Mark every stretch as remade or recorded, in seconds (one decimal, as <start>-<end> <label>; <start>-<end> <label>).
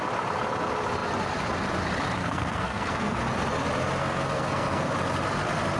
0.0-2.2 recorded; 2.2-3.2 remade; 3.2-4.0 recorded; 4.0-4.9 remade; 4.9-5.8 recorded